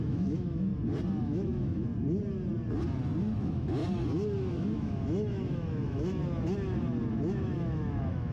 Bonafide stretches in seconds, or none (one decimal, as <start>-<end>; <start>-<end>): 0.7-1.2; 1.9-3.4; 3.8-4.5; 6.2-7.1